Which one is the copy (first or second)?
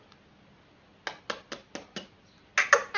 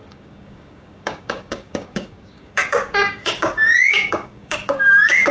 second